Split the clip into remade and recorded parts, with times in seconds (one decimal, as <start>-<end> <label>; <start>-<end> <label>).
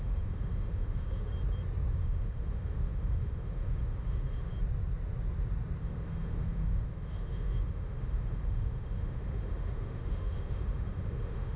0.0-1.3 remade; 1.3-1.9 recorded; 1.9-4.5 remade; 4.5-5.8 recorded; 5.8-11.6 remade